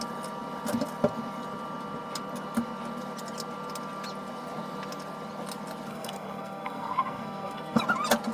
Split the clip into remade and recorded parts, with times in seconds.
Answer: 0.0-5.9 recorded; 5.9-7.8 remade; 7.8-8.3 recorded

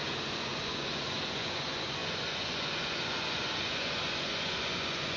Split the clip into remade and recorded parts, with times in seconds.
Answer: 0.0-5.2 remade

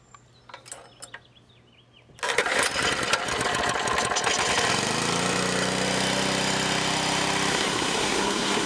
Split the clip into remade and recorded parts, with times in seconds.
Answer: 0.0-7.5 recorded; 7.5-8.7 remade

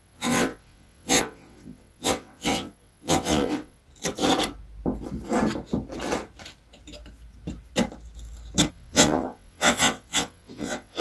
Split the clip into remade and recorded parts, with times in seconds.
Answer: 0.0-3.8 remade; 3.8-8.7 recorded; 8.7-11.0 remade

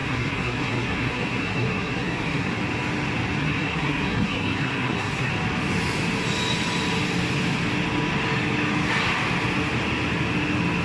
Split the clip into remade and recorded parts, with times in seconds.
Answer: 0.0-2.5 remade; 2.5-3.4 recorded; 3.4-5.3 remade; 5.3-10.8 recorded